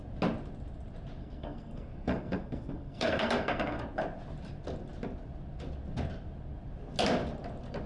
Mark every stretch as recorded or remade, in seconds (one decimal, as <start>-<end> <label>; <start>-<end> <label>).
0.0-1.2 recorded; 1.2-3.8 remade; 3.8-7.9 recorded